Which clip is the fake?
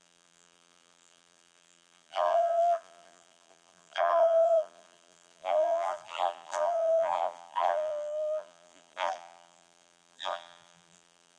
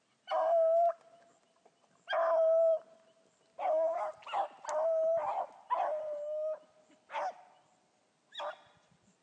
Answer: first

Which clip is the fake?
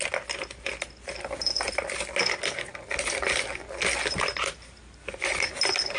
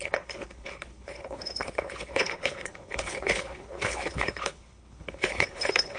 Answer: second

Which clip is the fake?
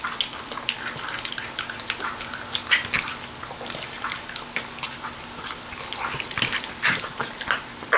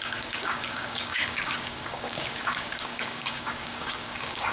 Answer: second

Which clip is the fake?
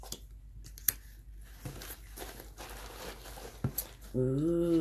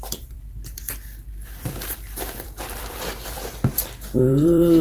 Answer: second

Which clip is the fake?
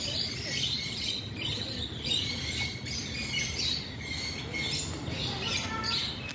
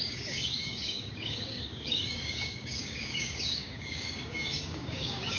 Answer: second